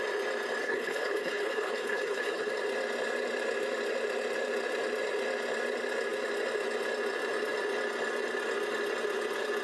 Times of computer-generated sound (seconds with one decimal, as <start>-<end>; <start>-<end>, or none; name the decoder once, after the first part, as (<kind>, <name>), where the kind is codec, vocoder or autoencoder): 0.6-2.5 (codec, HILCodec)